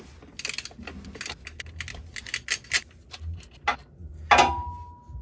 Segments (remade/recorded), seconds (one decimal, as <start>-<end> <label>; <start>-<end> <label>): 0.0-5.2 recorded